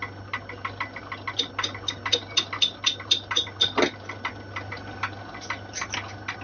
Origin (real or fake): real